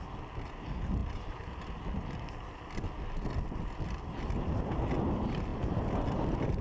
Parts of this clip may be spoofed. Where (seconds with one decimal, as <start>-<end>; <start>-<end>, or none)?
none